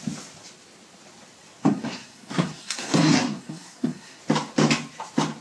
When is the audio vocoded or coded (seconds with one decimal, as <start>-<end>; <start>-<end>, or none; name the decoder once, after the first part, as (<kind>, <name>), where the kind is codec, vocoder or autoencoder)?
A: 1.6-4.2 (codec, SNAC)